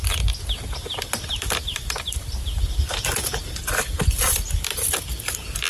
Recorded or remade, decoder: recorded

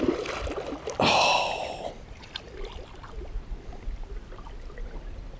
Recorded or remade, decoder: recorded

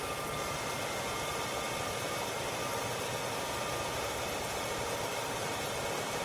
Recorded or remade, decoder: recorded